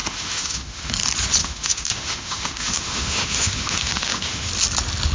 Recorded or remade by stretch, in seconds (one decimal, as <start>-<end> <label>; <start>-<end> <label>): 0.0-0.9 remade; 0.9-1.4 recorded; 1.4-4.5 remade; 4.5-5.1 recorded